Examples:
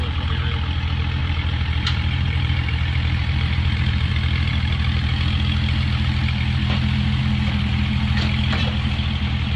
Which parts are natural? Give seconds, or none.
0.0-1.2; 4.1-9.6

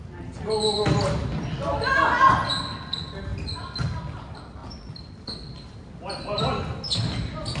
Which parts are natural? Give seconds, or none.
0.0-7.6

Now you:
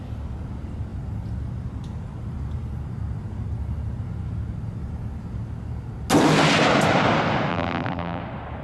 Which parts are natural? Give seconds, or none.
0.0-7.5; 8.2-8.6